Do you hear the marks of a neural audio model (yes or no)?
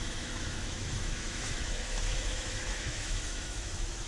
yes